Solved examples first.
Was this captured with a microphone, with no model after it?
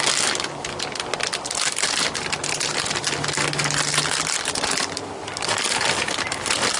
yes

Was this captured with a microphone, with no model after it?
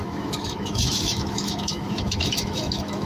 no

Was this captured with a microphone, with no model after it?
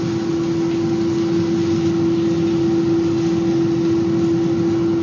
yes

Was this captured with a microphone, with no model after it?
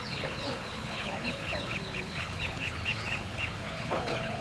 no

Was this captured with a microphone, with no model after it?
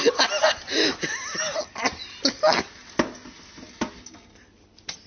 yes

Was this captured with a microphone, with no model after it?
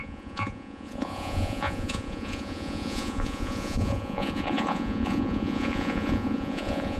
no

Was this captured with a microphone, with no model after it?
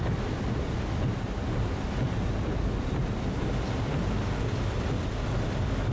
yes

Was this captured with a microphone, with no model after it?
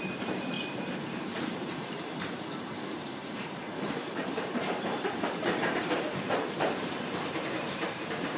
no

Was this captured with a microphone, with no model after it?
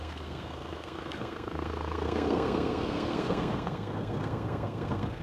no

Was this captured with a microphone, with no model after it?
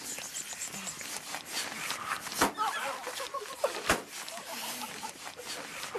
yes